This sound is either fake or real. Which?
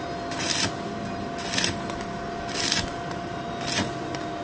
real